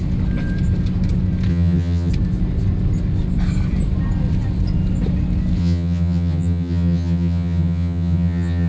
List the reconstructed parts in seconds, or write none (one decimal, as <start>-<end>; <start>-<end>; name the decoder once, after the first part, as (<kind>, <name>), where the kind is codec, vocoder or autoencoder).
1.5-2.1 (vocoder, HiFi-GAN); 5.6-8.7